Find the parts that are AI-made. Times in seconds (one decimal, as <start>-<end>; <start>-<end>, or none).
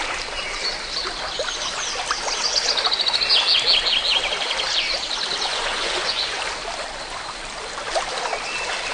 5.5-6.4